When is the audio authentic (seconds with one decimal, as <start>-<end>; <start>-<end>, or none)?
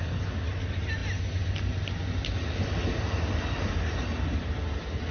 0.0-5.1